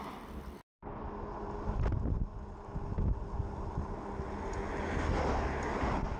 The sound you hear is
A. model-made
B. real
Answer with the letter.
B